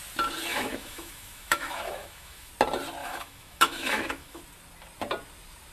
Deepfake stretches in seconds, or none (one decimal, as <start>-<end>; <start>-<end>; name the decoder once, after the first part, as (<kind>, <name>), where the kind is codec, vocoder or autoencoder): 0.5-2.5 (autoencoder, DAC-VAE); 3.0-4.4